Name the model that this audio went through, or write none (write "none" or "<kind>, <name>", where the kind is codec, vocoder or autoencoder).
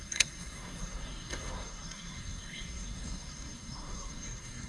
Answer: codec, SNAC